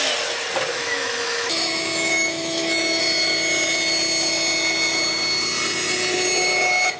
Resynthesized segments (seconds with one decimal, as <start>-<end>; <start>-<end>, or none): 0.7-3.0

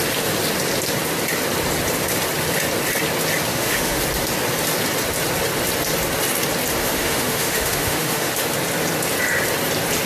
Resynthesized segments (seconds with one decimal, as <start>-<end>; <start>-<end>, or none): 3.5-4.0; 6.7-8.3

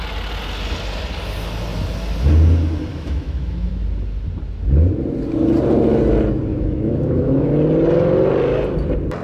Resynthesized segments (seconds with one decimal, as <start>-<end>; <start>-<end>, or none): 2.9-3.7; 6.5-7.5

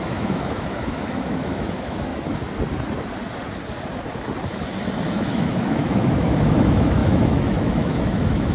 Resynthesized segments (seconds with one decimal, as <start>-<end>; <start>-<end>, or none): 0.0-2.1; 5.0-8.5

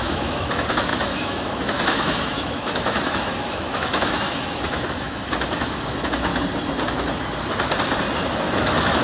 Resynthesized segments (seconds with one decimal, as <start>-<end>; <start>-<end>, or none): 0.0-6.3; 8.3-9.0

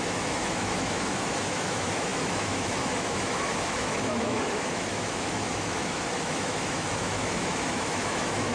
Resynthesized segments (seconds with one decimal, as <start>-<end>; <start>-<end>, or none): 0.0-8.5

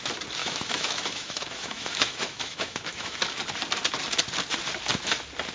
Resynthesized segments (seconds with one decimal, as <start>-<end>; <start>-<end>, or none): 0.4-3.2

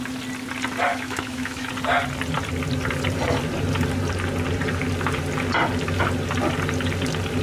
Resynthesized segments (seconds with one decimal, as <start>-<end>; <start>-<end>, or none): 0.9-1.7